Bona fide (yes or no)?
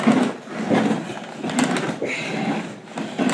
yes